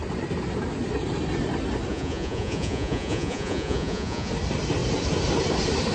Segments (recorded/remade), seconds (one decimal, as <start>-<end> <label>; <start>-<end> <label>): 0.0-1.9 recorded; 1.9-4.3 remade; 4.3-5.9 recorded